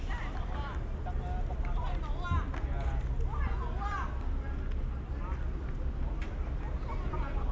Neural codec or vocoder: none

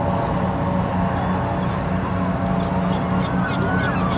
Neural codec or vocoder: none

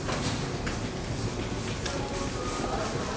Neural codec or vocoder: none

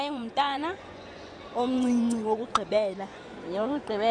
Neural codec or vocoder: vocoder, Vocos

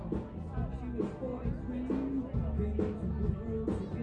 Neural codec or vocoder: none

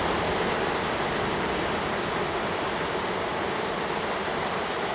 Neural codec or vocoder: none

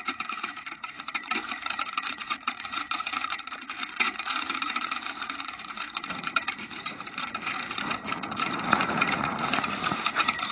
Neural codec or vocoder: vocoder, Vocos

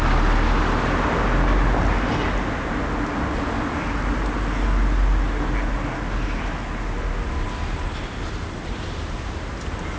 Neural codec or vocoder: none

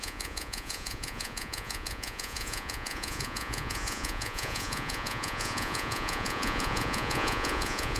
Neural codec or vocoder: vocoder, Vocos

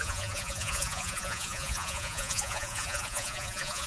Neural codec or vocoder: vocoder, Vocos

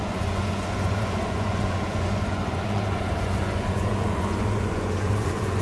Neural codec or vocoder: vocoder, Vocos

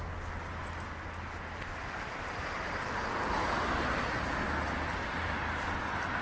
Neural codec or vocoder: none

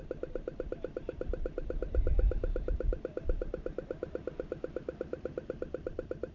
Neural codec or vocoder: none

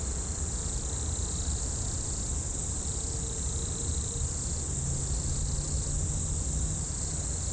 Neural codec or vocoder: none